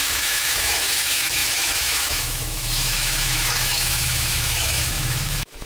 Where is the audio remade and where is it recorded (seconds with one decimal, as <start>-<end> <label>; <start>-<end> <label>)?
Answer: 0.0-5.7 remade